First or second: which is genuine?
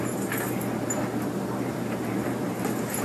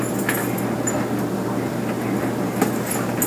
second